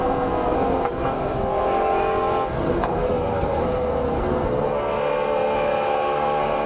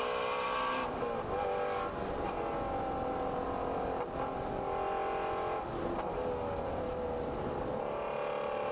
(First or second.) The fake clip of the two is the first